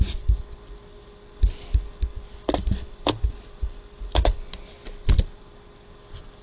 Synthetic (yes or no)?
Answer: no